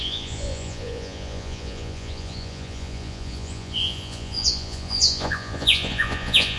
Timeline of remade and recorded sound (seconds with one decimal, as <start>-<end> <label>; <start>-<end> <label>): 0.0-6.6 remade